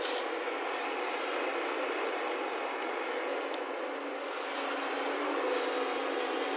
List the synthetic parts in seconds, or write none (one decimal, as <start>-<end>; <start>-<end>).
none